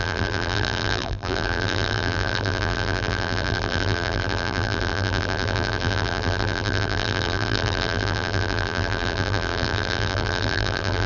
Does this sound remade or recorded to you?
remade